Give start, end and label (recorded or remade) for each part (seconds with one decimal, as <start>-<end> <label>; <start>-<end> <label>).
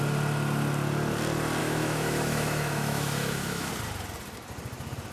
0.0-1.6 recorded; 1.6-3.7 remade; 3.7-5.1 recorded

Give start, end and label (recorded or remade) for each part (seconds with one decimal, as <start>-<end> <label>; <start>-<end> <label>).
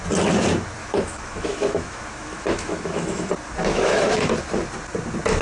0.0-0.8 recorded; 0.8-3.3 remade; 3.3-3.7 recorded; 3.7-4.3 remade; 4.3-5.4 recorded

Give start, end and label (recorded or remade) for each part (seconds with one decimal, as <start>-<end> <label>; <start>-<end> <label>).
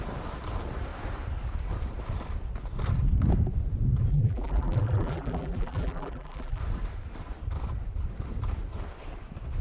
0.0-4.1 recorded; 4.1-6.6 remade; 6.6-9.6 recorded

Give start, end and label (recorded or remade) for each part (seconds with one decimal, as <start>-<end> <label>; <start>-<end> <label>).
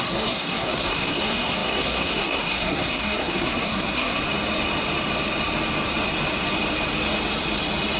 0.0-4.2 remade; 4.2-8.0 recorded